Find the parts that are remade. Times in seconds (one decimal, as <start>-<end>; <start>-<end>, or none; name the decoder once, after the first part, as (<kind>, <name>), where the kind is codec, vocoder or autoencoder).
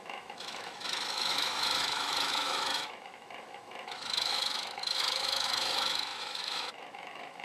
0.0-7.4 (autoencoder, DAC-VAE)